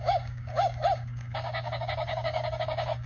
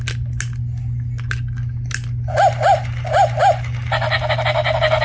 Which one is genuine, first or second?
second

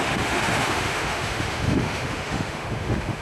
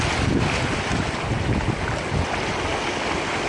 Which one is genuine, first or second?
second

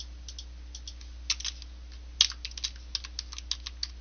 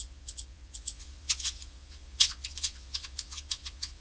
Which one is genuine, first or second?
first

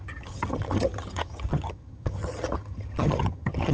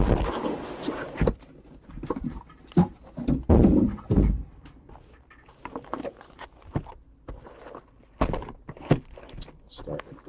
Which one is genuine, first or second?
second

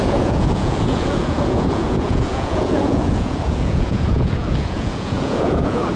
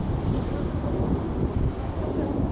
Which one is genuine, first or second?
second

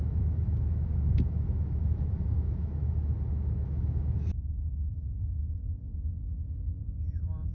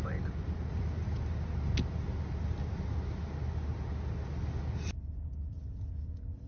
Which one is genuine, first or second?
second